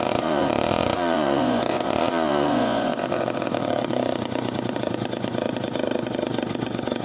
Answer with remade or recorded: remade